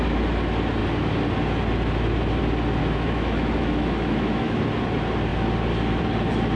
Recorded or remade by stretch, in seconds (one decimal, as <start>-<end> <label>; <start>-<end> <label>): 0.0-2.8 recorded; 2.8-4.6 remade; 4.6-6.6 recorded